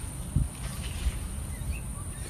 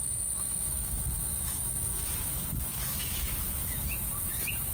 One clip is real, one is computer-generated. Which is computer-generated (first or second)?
second